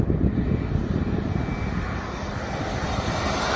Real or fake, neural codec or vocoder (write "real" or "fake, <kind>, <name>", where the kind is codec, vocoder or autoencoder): real